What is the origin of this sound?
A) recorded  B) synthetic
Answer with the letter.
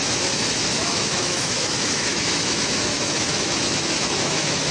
B